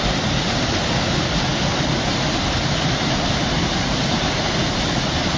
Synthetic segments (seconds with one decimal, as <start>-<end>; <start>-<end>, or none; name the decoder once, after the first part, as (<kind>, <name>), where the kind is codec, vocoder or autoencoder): none